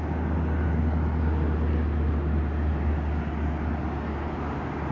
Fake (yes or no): no